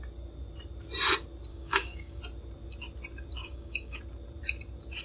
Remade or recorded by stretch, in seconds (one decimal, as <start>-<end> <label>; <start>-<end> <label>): 0.0-1.5 recorded; 1.5-2.2 remade; 2.2-3.4 recorded; 3.4-4.0 remade; 4.0-5.0 recorded